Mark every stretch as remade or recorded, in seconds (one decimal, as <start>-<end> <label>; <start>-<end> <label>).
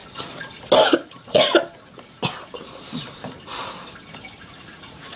0.0-1.0 recorded; 1.0-1.5 remade; 1.5-4.4 recorded; 4.4-5.2 remade